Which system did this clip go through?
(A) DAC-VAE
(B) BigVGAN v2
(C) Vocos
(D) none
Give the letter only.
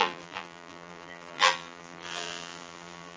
B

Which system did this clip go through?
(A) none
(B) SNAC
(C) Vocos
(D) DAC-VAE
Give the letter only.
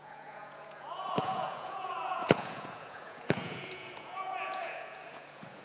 C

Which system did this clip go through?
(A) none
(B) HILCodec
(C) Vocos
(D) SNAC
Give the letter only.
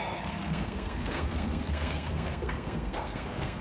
D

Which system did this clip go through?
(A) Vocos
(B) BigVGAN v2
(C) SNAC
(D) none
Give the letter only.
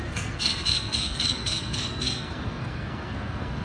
C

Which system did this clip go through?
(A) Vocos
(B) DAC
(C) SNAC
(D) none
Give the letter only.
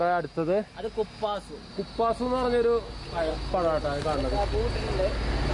D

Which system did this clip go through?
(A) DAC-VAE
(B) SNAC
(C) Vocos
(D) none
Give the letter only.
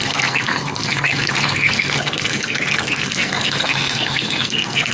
B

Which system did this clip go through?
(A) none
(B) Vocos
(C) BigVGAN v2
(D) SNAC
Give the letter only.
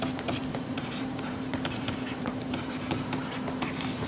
C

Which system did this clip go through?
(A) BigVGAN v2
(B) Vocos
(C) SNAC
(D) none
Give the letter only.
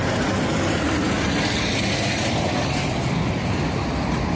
D